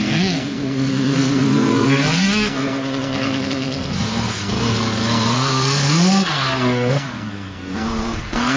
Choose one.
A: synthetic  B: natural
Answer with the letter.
A